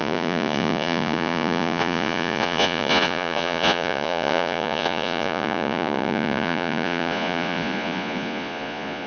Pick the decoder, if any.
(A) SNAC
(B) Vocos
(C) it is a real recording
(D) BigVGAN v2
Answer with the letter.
B